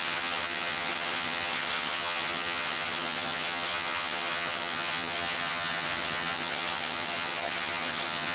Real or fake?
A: fake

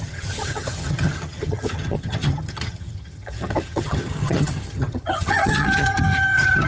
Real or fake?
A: fake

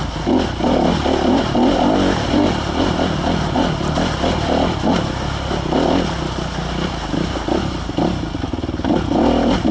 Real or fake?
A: real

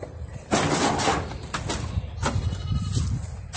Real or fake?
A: real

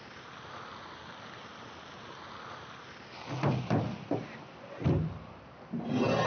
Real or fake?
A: real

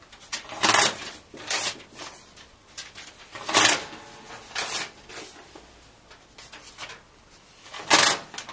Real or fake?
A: real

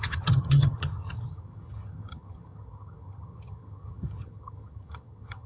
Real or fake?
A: fake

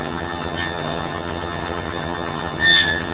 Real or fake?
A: fake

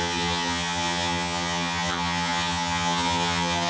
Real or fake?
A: fake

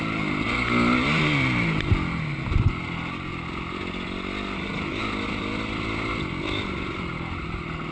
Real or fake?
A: real